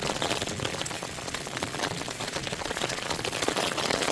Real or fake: fake